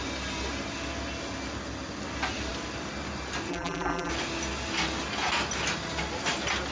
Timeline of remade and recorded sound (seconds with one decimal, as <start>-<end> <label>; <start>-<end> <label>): 0.0-3.5 recorded; 3.5-4.1 remade; 4.1-6.7 recorded